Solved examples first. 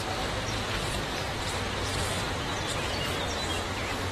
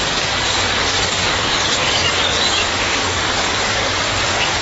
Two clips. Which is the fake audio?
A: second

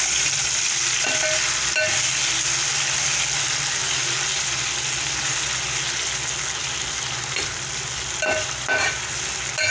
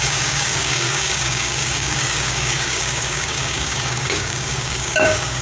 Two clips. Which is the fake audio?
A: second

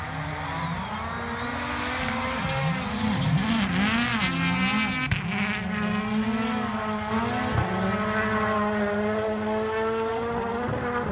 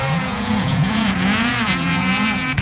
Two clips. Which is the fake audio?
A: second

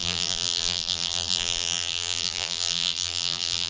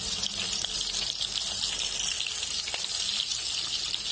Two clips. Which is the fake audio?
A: first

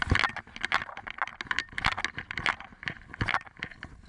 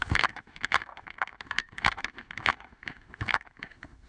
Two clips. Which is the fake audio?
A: second